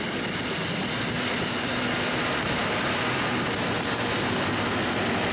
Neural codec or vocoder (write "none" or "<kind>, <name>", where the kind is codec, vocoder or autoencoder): none